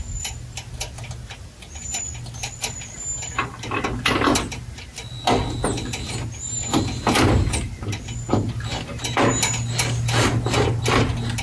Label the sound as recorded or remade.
recorded